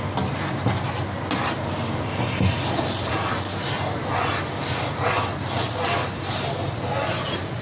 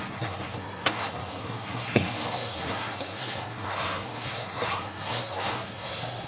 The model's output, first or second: second